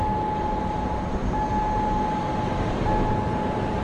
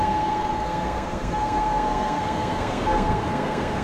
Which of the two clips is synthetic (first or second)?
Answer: second